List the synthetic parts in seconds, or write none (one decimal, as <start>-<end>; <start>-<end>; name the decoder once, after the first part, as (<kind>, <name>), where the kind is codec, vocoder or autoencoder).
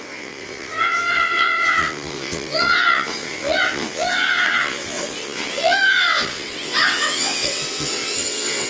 0.0-8.7 (vocoder, WaveNeXt)